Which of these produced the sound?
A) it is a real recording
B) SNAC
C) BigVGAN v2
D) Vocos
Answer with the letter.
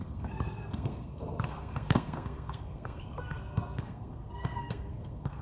B